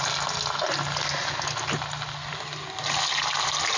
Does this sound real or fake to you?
real